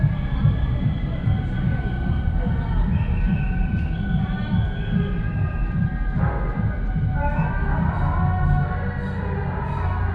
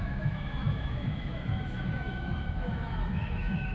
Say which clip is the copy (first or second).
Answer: second